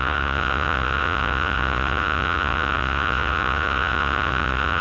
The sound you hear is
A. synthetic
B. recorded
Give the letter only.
A